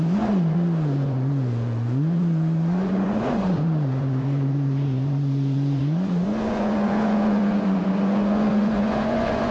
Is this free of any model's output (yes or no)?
no